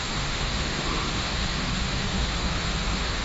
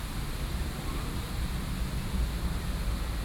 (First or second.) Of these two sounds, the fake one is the first